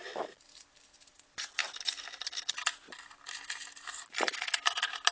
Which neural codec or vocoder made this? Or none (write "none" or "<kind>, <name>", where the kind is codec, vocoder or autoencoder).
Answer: none